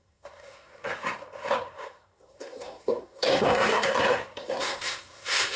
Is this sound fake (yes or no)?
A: yes